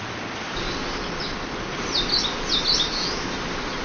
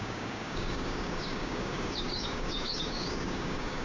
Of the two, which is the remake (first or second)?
second